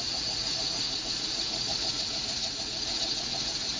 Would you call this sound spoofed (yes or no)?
yes